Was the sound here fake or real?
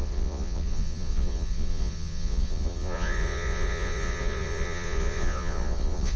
fake